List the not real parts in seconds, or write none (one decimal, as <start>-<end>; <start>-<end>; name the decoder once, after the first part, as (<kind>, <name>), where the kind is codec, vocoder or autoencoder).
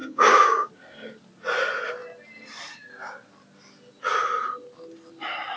0.0-0.7 (codec, DAC)